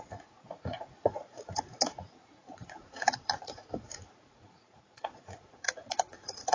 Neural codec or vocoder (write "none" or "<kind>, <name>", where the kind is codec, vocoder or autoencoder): vocoder, Vocos